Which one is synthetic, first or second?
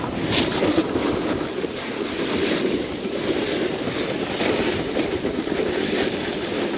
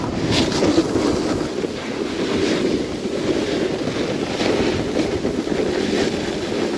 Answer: first